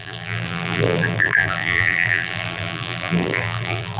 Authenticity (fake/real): fake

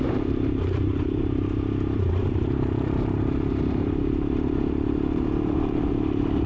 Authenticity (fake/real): fake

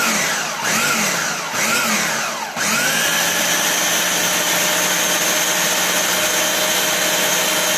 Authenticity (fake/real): real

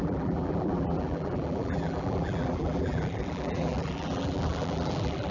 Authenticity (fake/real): fake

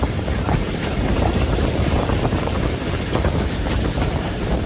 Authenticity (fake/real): fake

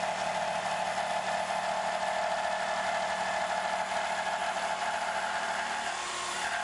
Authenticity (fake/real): real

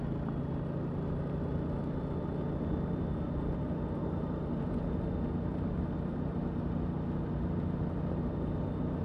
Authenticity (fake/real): real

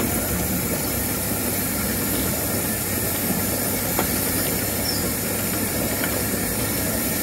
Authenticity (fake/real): fake